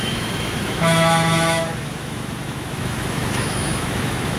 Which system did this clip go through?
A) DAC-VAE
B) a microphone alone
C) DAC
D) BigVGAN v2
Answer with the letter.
A